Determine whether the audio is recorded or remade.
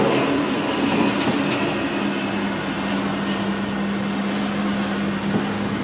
recorded